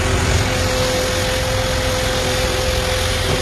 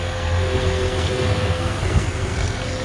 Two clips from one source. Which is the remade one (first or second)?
second